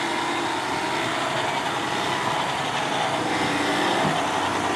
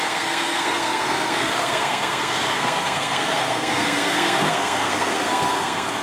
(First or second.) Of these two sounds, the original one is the first